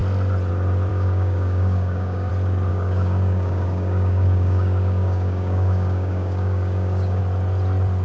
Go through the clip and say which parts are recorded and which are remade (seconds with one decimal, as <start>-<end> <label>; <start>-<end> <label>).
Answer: 0.0-0.9 recorded; 0.9-2.3 remade; 2.3-2.7 recorded; 2.7-7.2 remade; 7.2-8.0 recorded